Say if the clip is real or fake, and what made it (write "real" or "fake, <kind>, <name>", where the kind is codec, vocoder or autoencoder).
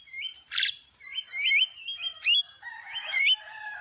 fake, vocoder, BigVGAN v2